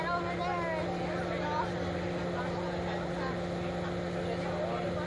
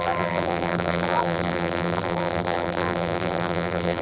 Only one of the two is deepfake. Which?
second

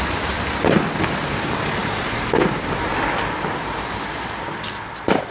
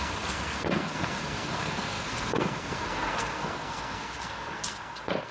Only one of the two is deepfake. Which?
second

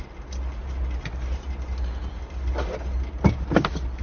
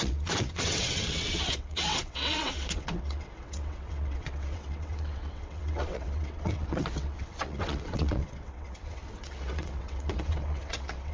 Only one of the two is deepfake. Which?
second